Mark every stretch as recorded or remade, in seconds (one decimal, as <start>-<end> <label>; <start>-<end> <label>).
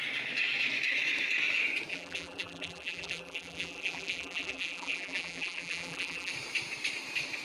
0.0-1.9 recorded; 1.9-6.3 remade; 6.3-7.4 recorded